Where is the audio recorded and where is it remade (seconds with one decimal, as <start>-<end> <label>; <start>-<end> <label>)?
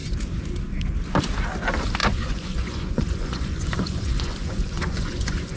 0.0-2.0 recorded; 2.0-5.6 remade